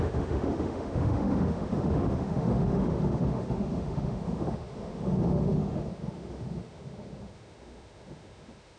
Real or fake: fake